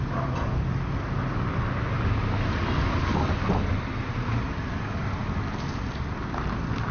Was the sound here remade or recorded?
recorded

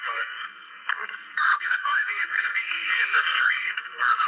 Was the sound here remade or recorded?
remade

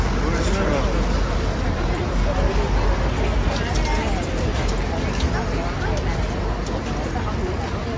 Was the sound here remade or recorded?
recorded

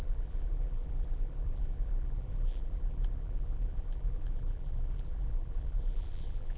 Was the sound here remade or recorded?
remade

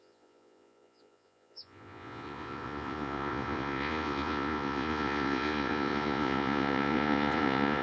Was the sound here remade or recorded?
remade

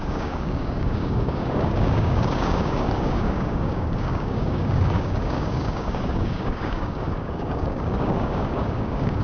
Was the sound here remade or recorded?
remade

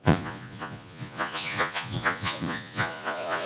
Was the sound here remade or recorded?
remade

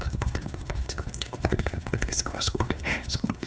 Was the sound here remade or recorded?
remade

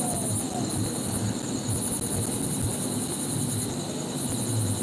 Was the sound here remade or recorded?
recorded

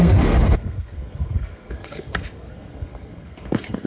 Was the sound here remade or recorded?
remade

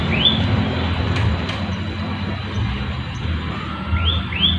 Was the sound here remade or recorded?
recorded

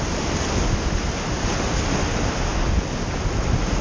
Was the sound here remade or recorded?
recorded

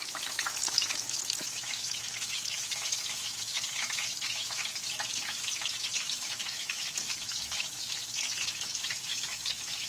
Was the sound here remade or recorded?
remade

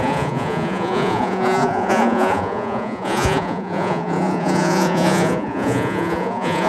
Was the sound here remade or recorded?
remade